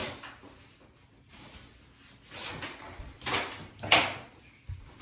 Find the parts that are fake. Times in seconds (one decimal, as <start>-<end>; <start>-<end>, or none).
none